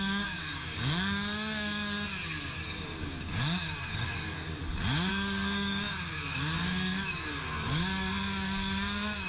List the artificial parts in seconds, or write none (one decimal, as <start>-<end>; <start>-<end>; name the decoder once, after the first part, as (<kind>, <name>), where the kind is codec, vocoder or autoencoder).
0.0-4.6 (codec, DAC); 5.1-9.3